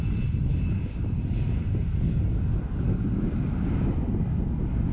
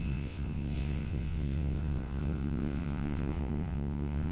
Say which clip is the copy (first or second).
second